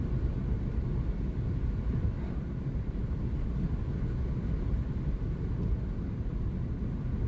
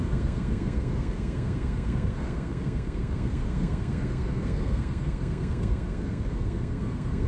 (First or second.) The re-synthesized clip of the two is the second